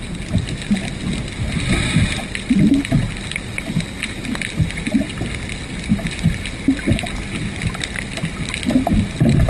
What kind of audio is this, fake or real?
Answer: real